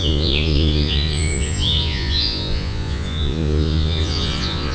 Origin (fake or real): fake